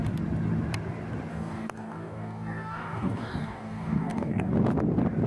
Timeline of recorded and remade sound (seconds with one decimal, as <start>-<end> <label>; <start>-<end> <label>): 0.0-1.3 recorded; 1.3-4.5 remade; 4.5-5.3 recorded